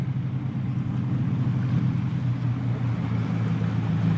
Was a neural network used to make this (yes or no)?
no